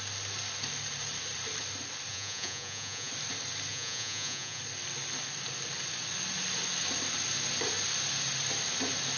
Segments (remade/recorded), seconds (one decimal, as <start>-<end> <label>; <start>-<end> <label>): 0.0-2.1 recorded; 2.1-3.1 remade; 3.1-3.7 recorded; 3.7-4.6 remade; 4.6-9.2 recorded